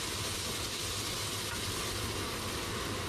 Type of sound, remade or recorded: recorded